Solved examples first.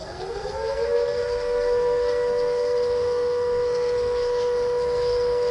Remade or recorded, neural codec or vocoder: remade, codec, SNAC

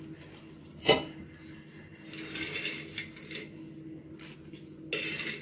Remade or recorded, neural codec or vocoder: recorded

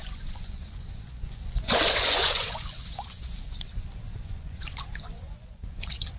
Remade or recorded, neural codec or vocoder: remade, vocoder, Vocos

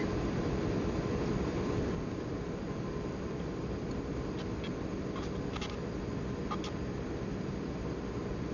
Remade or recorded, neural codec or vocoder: recorded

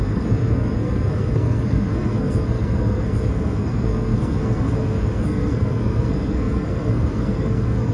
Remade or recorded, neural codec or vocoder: remade, codec, SNAC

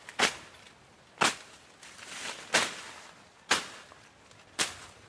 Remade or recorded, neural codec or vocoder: recorded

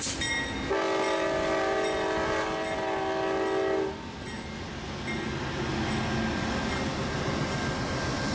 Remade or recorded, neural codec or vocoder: recorded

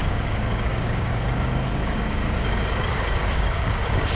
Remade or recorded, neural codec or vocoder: remade, codec, DAC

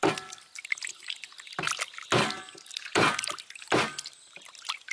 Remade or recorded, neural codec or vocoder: recorded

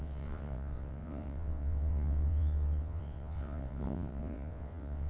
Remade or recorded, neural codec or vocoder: remade, vocoder, WaveNeXt